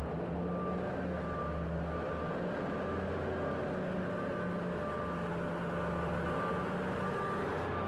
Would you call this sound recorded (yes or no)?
yes